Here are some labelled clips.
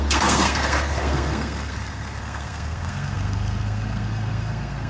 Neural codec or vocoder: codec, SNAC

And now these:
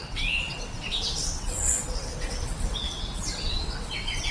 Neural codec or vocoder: vocoder, WaveNeXt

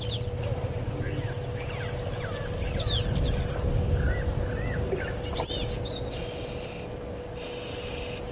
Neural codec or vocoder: none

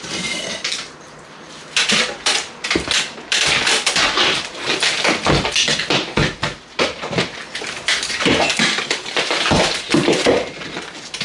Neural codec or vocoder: vocoder, BigVGAN v2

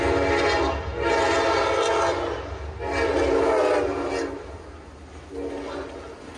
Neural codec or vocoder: none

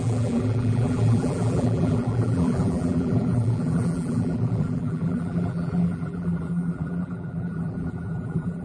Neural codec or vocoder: vocoder, BigVGAN v2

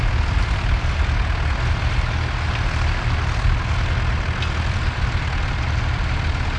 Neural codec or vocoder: none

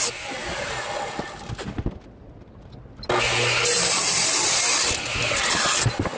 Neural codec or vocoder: none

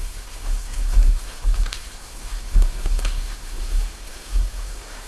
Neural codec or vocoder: codec, SNAC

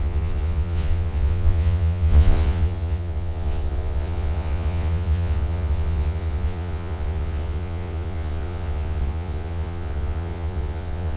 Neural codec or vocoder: vocoder, Vocos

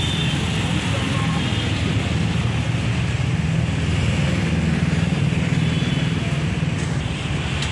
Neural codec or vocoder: none